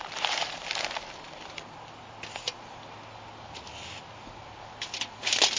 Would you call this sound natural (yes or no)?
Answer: yes